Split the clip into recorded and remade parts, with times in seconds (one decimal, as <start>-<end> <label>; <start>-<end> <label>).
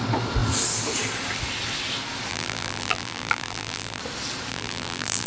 0.0-2.3 recorded; 2.3-4.0 remade; 4.0-4.5 recorded; 4.5-5.3 remade